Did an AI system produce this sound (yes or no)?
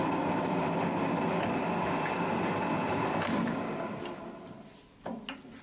no